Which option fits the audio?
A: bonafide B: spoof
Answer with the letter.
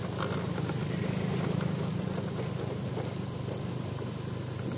A